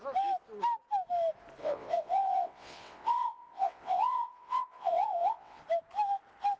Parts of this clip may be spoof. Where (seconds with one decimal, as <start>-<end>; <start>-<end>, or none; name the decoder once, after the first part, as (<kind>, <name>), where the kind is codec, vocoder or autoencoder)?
1.6-5.6 (vocoder, WaveNeXt)